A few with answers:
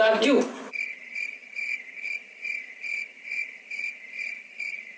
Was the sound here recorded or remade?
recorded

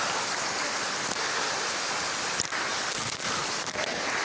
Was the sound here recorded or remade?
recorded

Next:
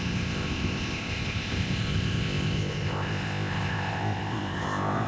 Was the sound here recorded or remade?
remade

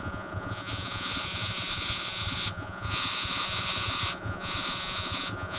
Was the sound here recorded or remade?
remade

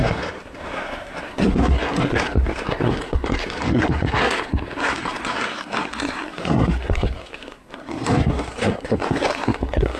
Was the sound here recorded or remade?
remade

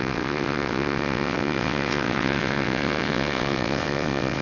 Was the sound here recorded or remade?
remade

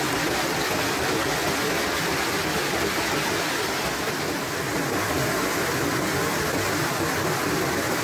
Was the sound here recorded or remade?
recorded